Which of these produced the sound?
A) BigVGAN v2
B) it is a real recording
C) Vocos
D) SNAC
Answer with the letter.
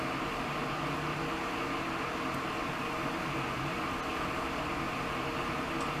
B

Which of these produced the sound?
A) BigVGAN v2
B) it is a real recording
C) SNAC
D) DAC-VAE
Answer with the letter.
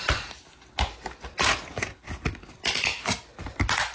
B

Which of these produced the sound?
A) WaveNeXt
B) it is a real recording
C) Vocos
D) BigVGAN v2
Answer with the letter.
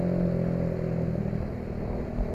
B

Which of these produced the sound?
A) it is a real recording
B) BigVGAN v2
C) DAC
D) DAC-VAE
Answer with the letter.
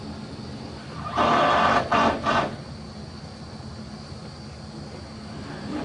A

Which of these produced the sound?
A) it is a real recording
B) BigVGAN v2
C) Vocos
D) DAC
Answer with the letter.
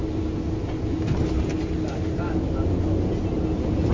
A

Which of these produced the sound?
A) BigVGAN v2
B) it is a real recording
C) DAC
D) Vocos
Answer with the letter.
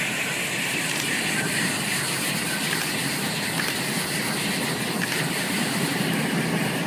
B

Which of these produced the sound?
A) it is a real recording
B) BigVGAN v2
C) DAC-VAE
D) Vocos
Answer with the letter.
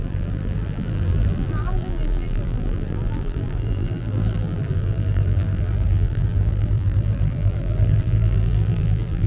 B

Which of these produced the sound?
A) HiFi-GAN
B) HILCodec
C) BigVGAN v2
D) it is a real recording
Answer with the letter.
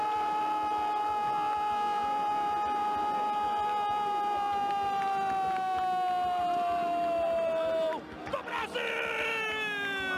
D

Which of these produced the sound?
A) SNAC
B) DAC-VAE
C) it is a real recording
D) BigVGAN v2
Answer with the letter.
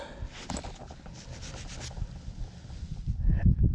C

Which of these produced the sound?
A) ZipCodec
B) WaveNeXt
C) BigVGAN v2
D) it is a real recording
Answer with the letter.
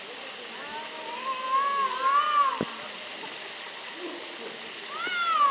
D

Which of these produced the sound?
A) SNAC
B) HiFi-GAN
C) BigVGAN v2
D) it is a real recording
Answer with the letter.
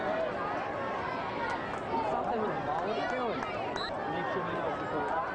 D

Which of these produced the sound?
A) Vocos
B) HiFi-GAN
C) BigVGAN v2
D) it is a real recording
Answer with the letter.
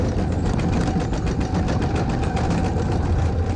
D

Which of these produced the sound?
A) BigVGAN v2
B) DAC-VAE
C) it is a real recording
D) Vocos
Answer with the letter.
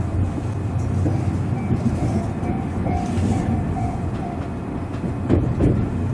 C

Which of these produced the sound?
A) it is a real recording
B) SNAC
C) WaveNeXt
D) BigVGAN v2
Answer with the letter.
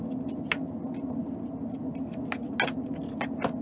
A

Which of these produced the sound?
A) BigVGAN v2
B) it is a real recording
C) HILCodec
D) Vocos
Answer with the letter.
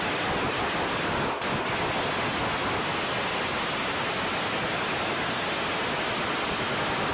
B